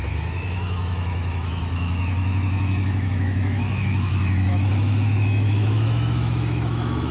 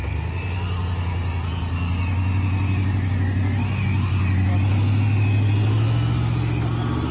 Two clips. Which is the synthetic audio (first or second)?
first